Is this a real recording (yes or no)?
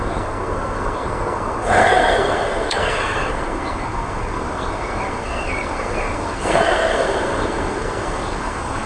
no